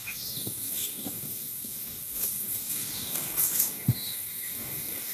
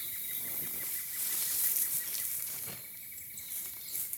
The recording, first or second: second